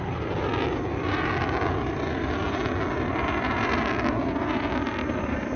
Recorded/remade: recorded